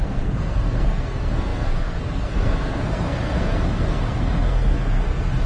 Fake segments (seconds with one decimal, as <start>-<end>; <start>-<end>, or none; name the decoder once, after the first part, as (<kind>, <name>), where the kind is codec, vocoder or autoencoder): 0.0-5.5 (codec, SNAC)